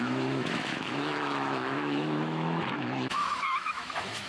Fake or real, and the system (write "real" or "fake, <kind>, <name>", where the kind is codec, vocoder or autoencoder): fake, autoencoder, DAC-VAE